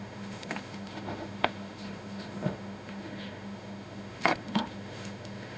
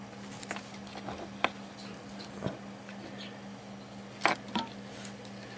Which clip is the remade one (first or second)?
first